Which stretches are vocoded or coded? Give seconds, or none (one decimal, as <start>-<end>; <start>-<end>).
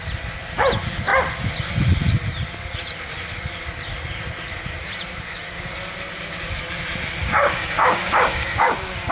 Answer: 7.2-8.7